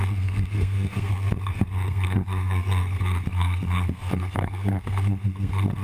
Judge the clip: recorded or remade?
remade